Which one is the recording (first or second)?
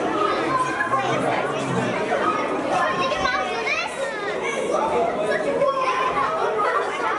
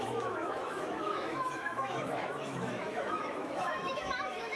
first